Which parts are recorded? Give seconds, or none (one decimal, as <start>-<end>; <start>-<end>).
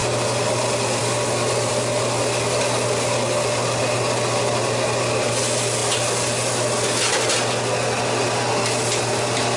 0.0-9.6